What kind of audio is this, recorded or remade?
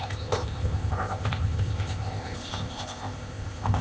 remade